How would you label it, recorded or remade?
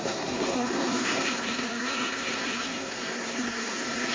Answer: remade